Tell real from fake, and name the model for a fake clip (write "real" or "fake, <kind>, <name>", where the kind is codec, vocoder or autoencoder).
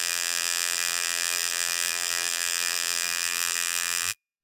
fake, vocoder, BigVGAN v2